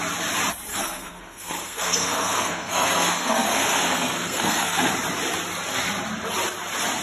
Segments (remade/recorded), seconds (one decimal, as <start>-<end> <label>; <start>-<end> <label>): 0.0-0.7 recorded; 0.7-4.9 remade; 4.9-7.0 recorded